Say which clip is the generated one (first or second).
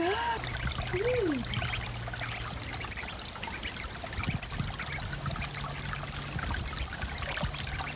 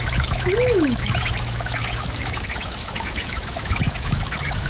second